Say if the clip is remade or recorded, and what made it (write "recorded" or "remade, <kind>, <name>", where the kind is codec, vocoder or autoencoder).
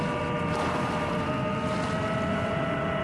recorded